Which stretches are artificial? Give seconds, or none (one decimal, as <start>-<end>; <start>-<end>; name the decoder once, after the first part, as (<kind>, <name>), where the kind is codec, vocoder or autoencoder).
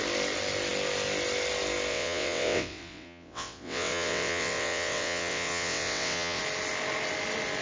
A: 1.9-6.4 (vocoder, WaveNeXt)